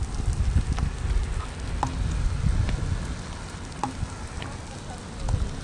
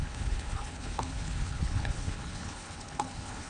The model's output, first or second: second